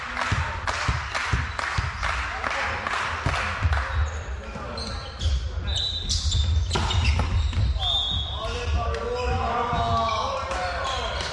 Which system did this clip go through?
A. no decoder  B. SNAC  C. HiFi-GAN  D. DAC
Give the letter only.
A